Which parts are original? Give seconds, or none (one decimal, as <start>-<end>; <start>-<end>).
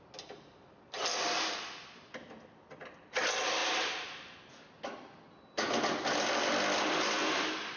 0.0-7.8